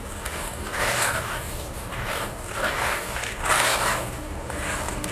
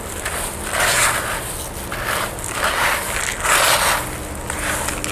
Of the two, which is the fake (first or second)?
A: first